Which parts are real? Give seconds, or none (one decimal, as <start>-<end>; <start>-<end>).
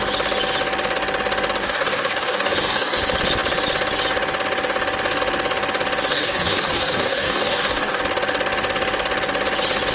0.0-1.6; 3.0-6.1; 8.0-9.9